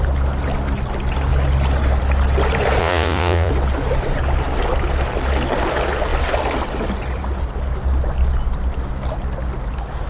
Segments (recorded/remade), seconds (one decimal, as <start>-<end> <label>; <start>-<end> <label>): 0.0-2.8 recorded; 2.8-3.5 remade; 3.5-10.1 recorded